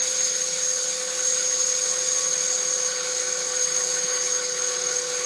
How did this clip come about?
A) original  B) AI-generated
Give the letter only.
B